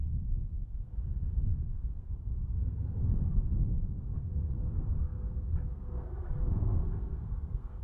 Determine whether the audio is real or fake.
fake